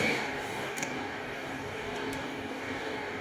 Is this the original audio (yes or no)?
no